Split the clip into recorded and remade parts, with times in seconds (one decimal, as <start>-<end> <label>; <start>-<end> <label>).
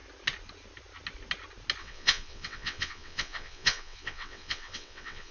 0.0-1.8 recorded; 1.8-5.3 remade